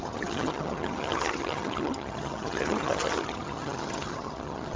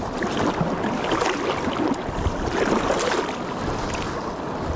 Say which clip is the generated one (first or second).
first